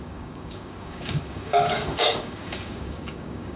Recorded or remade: remade